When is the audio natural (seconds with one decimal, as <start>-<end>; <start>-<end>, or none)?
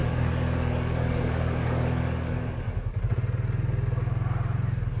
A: 3.0-5.0